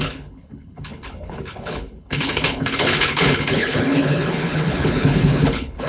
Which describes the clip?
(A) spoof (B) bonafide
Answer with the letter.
A